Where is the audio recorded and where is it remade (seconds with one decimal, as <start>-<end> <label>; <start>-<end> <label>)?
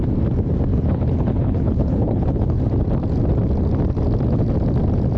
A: 0.0-0.7 recorded; 0.7-2.6 remade; 2.6-5.2 recorded